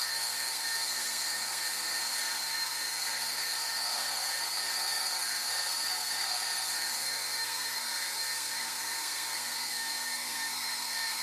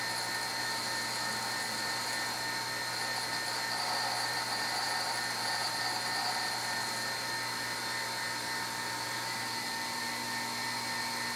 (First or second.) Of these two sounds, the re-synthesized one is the first